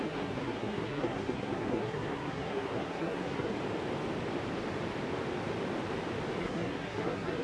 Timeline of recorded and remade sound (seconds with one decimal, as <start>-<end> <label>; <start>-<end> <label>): 0.0-3.6 remade; 3.6-6.4 recorded; 6.4-7.4 remade